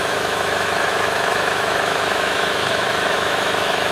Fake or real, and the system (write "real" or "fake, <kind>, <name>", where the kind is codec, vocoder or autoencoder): fake, autoencoder, DAC-VAE